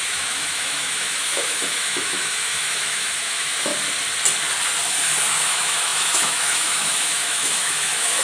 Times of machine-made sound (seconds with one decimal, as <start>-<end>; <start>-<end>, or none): 0.0-3.7; 5.3-8.2